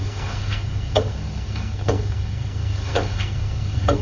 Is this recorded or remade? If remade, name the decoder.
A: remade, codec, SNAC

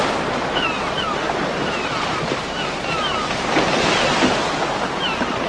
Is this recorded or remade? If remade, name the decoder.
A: recorded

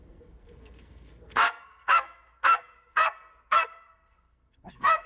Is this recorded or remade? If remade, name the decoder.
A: remade, codec, SNAC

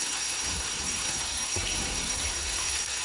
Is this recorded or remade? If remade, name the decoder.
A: remade, codec, SNAC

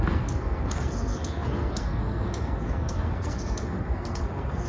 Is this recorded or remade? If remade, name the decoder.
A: remade, codec, SNAC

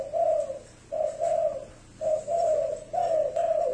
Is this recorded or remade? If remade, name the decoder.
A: recorded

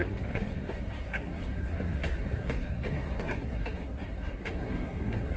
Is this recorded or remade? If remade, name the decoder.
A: remade, codec, SNAC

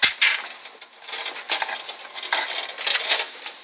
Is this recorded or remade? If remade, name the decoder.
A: recorded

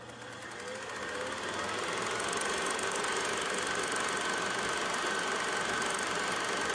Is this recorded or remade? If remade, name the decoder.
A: recorded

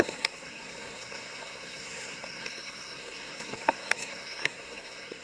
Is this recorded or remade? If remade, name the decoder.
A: remade, codec, SNAC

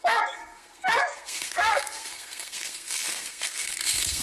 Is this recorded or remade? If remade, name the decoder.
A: remade, codec, SNAC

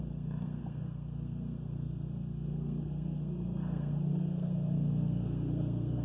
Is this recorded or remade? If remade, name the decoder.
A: remade, codec, SNAC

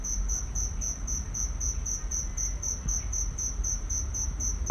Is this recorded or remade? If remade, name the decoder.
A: recorded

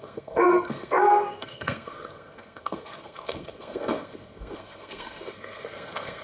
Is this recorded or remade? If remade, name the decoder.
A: remade, codec, SNAC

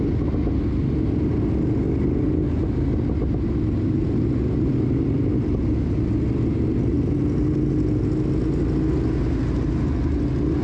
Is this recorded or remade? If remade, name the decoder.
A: recorded